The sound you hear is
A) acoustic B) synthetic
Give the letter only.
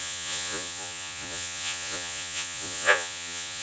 B